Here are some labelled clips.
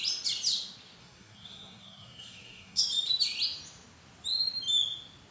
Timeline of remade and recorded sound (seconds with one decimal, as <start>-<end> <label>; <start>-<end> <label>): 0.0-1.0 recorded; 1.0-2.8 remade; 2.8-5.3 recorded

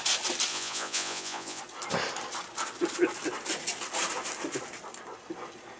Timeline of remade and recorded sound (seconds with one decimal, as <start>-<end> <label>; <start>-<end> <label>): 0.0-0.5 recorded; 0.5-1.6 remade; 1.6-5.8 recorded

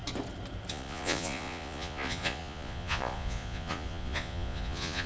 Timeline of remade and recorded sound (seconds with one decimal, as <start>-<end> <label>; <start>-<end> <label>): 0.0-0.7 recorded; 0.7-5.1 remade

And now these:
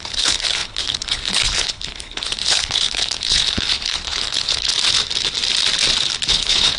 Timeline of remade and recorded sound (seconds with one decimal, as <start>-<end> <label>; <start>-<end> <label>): 0.0-4.7 remade; 4.7-6.3 recorded; 6.3-6.8 remade

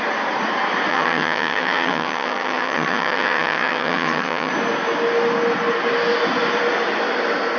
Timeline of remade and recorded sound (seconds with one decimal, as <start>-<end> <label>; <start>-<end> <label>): 0.0-0.9 recorded; 0.9-4.5 remade; 4.5-7.6 recorded